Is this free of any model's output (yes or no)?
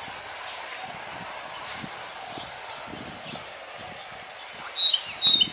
yes